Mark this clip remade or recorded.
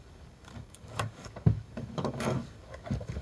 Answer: remade